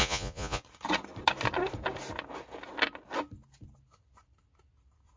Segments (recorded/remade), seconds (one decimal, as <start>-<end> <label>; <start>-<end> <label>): 0.0-0.6 remade; 0.6-5.2 recorded